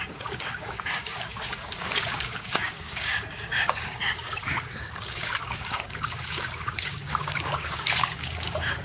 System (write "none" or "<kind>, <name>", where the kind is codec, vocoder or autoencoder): codec, DAC